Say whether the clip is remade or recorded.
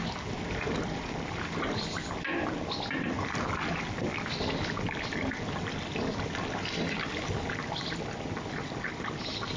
recorded